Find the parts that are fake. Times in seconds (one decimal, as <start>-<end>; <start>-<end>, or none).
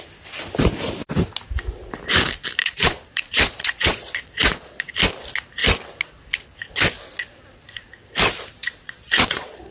2.6-4.9; 8.6-9.7